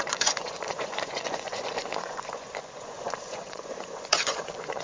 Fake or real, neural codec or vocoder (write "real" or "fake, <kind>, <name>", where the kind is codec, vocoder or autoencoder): fake, vocoder, Vocos